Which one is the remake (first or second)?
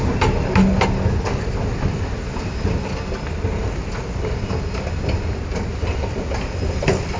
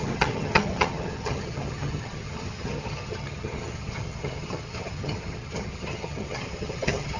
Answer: second